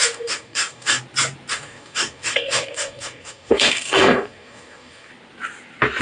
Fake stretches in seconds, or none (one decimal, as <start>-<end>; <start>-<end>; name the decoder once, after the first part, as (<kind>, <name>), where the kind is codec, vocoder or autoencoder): 0.0-1.0 (codec, DAC); 1.5-5.1

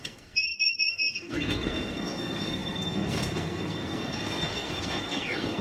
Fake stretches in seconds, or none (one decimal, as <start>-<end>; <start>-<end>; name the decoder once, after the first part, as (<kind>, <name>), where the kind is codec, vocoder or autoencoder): 0.0-5.6 (codec, SNAC)